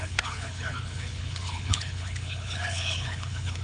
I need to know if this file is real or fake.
fake